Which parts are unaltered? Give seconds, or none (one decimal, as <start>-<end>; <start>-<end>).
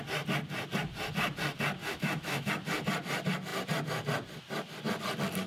0.0-1.8; 2.5-5.5